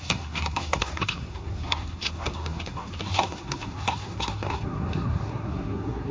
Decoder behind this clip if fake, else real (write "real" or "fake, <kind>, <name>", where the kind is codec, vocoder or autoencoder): fake, codec, SNAC